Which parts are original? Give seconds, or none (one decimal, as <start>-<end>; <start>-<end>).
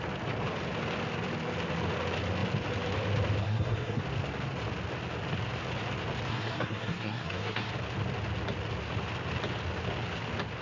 0.0-3.4; 4.0-6.3; 7.7-10.6